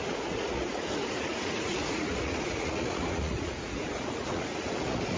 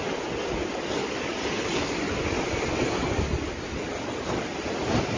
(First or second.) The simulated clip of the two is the first